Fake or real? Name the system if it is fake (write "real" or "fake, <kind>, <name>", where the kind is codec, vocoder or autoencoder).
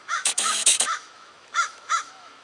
fake, autoencoder, DAC-VAE